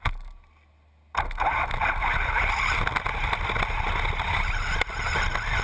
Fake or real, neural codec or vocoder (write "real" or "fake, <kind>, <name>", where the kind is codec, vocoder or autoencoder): real